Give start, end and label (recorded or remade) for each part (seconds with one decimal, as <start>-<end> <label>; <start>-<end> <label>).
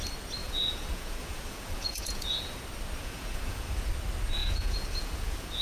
0.0-0.4 recorded; 0.4-2.6 remade; 2.6-3.0 recorded; 3.0-3.9 remade; 3.9-4.4 recorded; 4.4-5.6 remade